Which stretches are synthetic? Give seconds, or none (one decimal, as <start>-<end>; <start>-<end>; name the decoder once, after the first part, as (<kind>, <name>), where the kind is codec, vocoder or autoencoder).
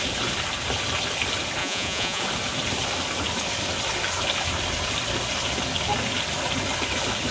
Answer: 1.6-2.2 (vocoder, Vocos)